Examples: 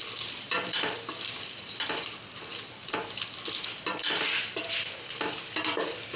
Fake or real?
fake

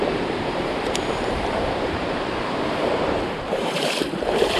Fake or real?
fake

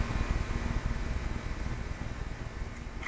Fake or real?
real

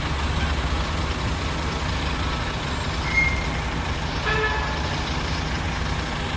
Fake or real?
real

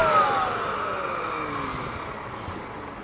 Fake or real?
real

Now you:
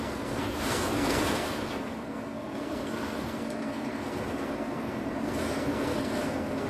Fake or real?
fake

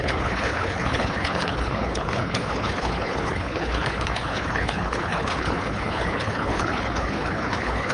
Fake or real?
fake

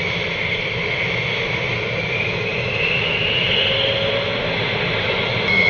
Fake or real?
real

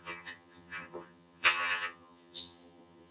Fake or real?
fake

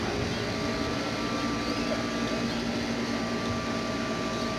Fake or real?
real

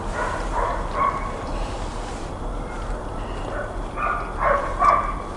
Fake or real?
real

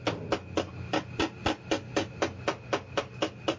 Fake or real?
real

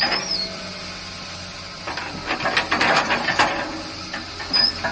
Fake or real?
fake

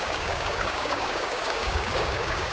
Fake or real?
fake